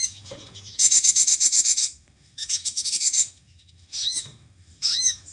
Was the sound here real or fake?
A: fake